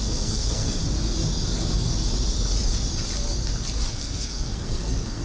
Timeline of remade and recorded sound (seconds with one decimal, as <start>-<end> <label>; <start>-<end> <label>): 0.0-0.8 remade; 0.8-3.9 recorded; 3.9-5.2 remade